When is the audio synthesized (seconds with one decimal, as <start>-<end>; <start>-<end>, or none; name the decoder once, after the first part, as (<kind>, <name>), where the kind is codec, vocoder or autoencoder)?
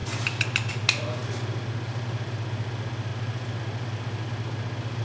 none